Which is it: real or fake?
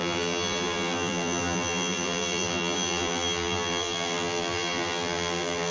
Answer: fake